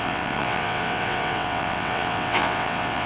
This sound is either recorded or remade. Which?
remade